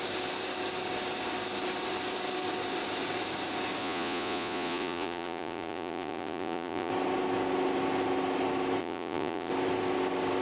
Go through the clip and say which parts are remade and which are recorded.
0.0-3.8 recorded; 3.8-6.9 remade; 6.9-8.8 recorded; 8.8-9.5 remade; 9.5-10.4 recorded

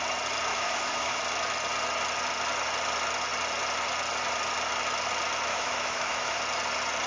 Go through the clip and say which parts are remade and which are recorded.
0.0-0.5 recorded; 0.5-1.2 remade; 1.2-5.5 recorded; 5.5-6.4 remade; 6.4-7.1 recorded

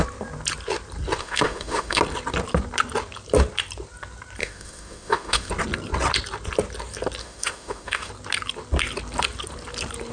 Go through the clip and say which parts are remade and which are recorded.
0.0-1.2 recorded; 1.2-2.0 remade; 2.0-4.4 recorded; 4.4-5.5 remade; 5.5-7.2 recorded; 7.2-8.1 remade; 8.1-10.1 recorded